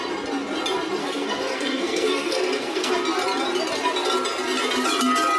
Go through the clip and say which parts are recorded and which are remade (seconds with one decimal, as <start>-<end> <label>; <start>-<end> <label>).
0.0-1.0 recorded; 1.0-2.9 remade; 2.9-5.4 recorded